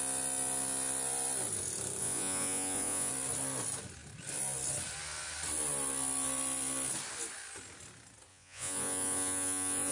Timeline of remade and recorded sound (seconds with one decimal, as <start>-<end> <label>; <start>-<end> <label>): 0.0-2.0 recorded; 2.0-3.1 remade; 3.1-8.3 recorded; 8.3-9.9 remade